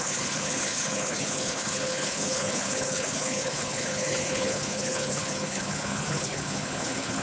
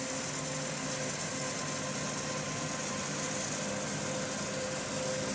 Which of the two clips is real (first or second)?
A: second